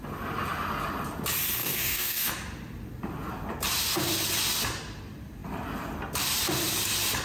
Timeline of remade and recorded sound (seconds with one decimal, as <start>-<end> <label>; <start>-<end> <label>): 0.0-1.6 recorded; 1.6-2.3 remade; 2.3-7.2 recorded